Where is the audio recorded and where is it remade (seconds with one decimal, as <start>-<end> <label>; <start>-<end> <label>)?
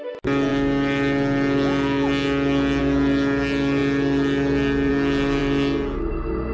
0.0-6.5 recorded